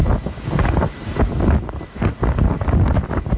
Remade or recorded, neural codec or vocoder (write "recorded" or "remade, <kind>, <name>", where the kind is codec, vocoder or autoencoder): recorded